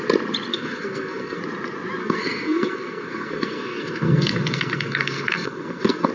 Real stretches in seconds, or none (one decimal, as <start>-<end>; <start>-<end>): 0.0-0.5; 1.4-2.0